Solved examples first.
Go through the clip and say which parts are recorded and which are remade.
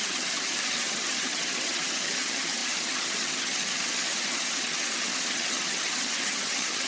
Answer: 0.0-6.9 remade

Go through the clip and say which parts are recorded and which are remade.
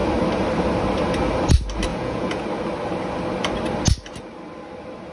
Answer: 0.0-1.9 recorded; 1.9-2.4 remade; 2.4-5.1 recorded